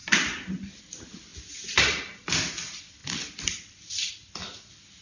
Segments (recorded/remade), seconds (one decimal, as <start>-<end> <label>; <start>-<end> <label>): 0.0-0.8 remade; 0.8-3.0 recorded; 3.0-4.1 remade; 4.1-5.0 recorded